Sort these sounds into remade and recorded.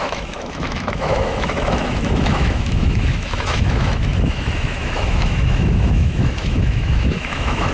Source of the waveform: remade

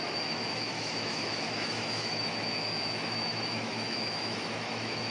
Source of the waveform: remade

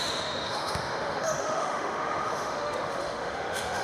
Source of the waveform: remade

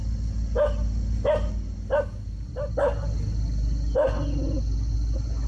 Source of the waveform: recorded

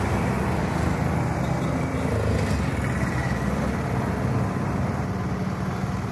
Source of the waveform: recorded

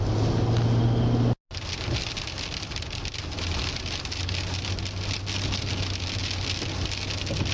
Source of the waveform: recorded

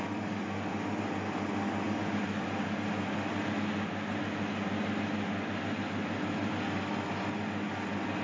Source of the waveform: recorded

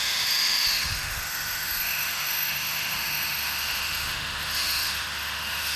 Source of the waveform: remade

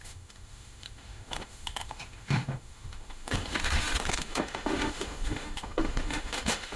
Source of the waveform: remade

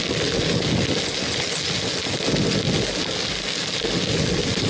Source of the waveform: recorded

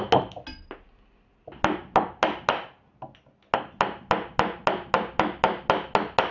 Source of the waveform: recorded